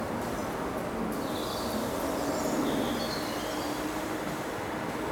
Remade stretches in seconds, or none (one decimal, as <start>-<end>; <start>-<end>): 0.0-0.4; 3.5-5.1